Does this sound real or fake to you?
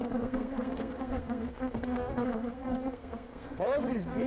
fake